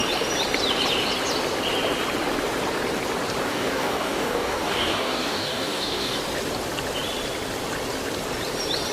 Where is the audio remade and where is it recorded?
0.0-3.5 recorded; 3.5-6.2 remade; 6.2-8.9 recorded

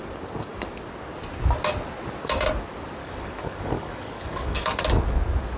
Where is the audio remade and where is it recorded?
0.0-3.0 recorded; 3.0-4.8 remade; 4.8-5.6 recorded

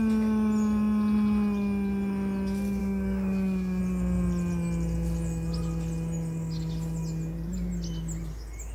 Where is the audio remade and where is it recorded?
0.0-2.8 recorded; 2.8-3.8 remade; 3.8-8.7 recorded

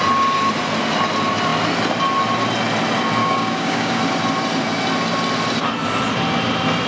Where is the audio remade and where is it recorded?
0.0-3.2 recorded; 3.2-4.0 remade; 4.0-6.9 recorded

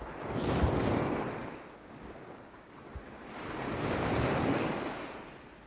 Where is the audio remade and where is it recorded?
0.0-1.8 recorded; 1.8-4.1 remade; 4.1-5.7 recorded

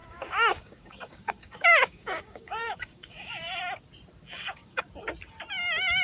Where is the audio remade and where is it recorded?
0.0-3.6 remade; 3.6-4.3 recorded; 4.3-4.9 remade; 4.9-6.0 recorded

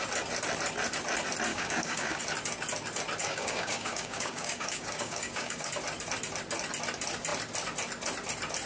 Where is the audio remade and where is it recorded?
0.0-1.5 recorded; 1.5-2.2 remade; 2.2-3.2 recorded; 3.2-5.7 remade; 5.7-8.7 recorded